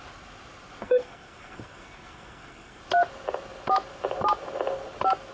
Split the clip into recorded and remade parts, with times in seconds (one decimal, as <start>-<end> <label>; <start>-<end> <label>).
0.0-0.8 recorded; 0.8-2.8 remade; 2.8-5.3 recorded